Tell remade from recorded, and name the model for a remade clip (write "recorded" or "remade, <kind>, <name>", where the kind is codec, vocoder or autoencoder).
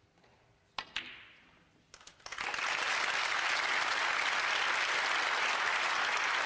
recorded